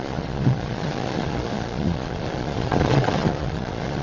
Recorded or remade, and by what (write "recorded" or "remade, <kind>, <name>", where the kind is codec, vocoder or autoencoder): remade, vocoder, Vocos